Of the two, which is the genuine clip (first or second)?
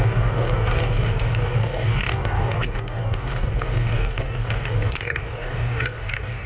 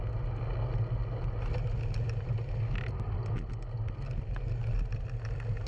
second